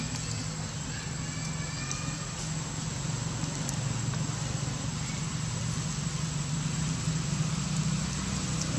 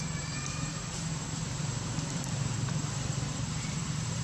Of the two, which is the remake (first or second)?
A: second